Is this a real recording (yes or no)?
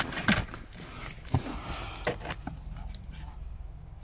yes